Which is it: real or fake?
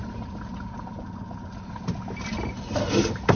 real